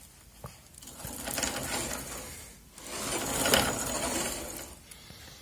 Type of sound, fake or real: real